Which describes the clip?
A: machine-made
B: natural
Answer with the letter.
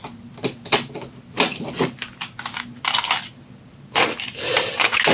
B